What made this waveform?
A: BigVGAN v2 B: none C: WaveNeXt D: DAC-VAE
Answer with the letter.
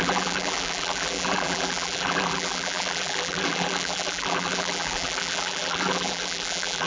A